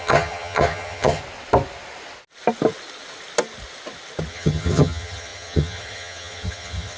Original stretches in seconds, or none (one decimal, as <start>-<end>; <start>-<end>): 1.2-4.3